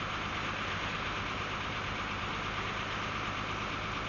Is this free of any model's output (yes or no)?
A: yes